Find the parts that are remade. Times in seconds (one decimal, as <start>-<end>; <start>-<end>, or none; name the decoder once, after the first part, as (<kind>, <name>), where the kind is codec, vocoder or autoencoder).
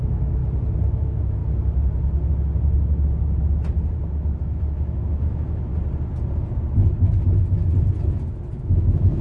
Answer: 0.0-0.4 (autoencoder, DAC-VAE); 0.9-1.4; 4.4-5.7; 8.6-9.2